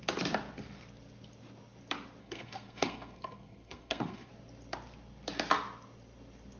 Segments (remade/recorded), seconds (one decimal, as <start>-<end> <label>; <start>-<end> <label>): 0.0-2.2 recorded; 2.2-4.3 remade; 4.3-6.6 recorded